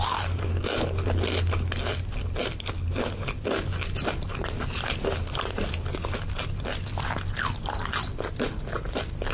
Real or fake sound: real